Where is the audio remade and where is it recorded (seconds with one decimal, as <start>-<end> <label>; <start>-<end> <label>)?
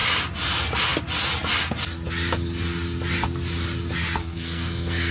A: 0.0-4.2 recorded; 4.2-5.1 remade